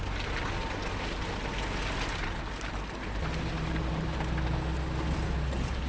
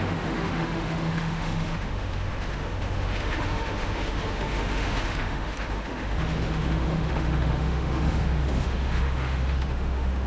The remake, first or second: second